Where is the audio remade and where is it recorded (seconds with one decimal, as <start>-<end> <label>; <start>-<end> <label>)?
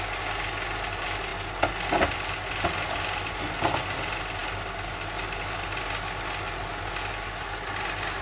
0.0-8.2 recorded